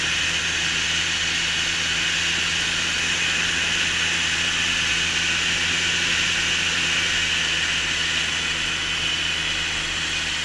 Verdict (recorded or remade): recorded